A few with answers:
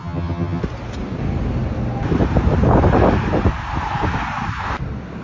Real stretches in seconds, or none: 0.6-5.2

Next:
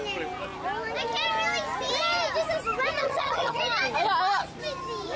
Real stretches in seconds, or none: 0.0-3.0; 3.6-5.2

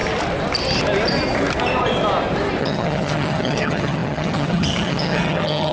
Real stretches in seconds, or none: 0.0-2.6

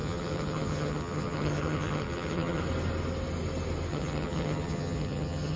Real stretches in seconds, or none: 2.6-3.9

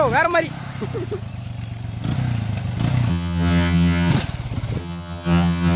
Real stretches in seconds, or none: 0.0-3.1; 4.1-4.8

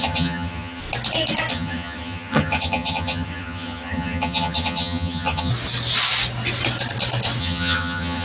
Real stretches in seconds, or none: 0.8-1.5; 5.5-7.4

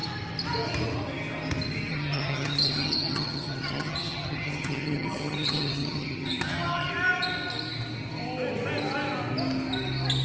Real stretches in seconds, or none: 0.0-1.9; 6.9-10.2